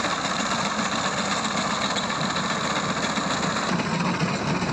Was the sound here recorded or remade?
recorded